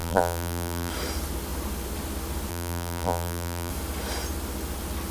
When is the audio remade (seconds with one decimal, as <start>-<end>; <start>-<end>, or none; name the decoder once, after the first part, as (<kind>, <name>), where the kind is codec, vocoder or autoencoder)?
0.0-0.9 (vocoder, BigVGAN v2); 2.5-3.7

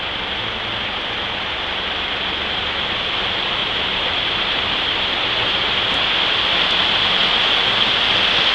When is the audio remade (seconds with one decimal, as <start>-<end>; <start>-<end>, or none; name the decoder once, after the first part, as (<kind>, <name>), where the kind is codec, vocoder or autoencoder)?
3.6-5.9 (vocoder, BigVGAN v2)

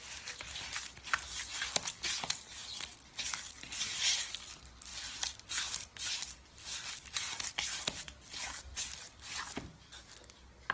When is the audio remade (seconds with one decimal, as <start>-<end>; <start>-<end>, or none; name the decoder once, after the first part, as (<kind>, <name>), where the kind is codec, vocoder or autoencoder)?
4.9-9.5 (vocoder, BigVGAN v2)

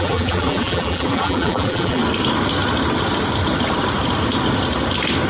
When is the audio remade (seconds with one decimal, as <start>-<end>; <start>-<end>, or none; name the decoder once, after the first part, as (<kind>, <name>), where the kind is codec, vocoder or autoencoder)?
0.0-2.0 (vocoder, BigVGAN v2)

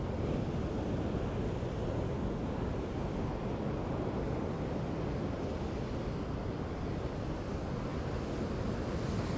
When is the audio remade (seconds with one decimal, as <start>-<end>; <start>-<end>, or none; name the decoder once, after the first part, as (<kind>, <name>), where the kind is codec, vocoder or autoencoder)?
none

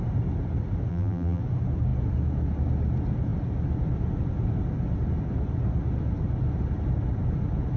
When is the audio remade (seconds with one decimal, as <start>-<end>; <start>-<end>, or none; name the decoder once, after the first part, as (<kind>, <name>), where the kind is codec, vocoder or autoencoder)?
0.9-1.4 (vocoder, BigVGAN v2)